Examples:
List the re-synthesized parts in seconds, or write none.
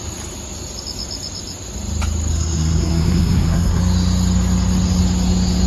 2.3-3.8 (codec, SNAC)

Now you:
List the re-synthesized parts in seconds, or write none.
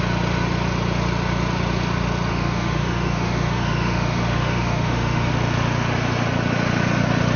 2.3-5.3 (autoencoder, DAC-VAE)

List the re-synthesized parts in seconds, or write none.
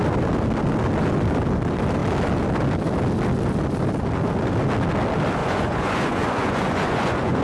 5.4-7.4 (vocoder, Vocos)